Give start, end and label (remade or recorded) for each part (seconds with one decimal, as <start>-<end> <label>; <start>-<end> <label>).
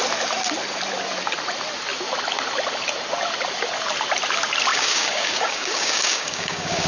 0.0-4.7 recorded; 4.7-6.9 remade